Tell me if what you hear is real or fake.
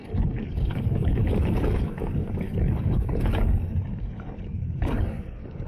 fake